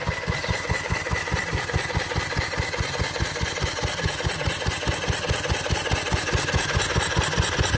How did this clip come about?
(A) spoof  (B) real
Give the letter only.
B